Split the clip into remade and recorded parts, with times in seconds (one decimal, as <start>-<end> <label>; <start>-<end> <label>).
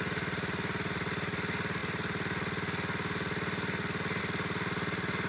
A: 0.0-5.3 recorded